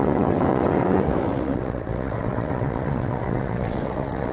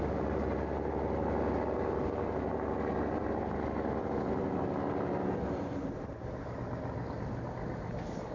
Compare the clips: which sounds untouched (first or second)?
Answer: second